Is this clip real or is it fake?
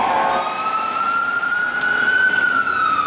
real